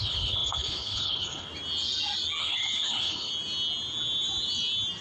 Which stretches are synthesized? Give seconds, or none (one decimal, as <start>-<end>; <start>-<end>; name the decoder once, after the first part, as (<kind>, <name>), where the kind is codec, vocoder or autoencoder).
0.0-1.5 (codec, HILCodec); 2.4-3.3